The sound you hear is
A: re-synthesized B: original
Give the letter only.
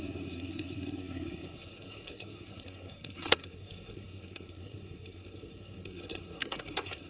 A